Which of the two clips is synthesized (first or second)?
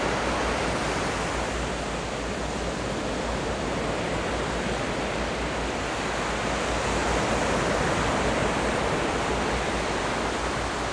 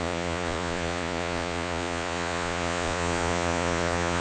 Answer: second